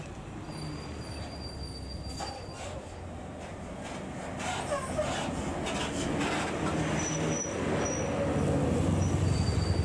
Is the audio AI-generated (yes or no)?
no